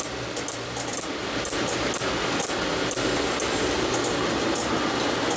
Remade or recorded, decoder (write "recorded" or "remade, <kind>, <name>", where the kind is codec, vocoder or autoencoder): recorded